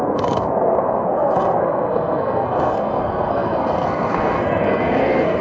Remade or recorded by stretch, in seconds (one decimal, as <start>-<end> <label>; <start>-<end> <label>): 0.0-5.4 remade